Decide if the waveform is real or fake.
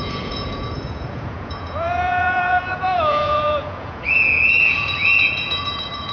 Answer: fake